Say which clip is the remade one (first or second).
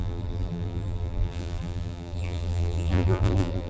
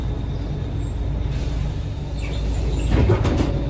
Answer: first